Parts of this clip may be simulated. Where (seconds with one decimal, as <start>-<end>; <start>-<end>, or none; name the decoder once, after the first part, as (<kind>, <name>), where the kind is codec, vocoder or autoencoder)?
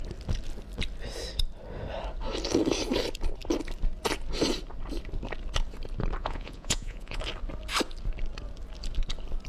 6.2-7.2 (vocoder, Vocos)